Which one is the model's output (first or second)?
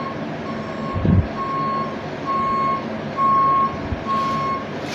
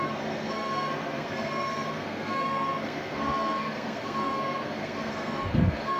second